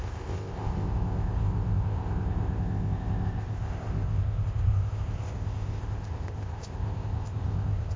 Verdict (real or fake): fake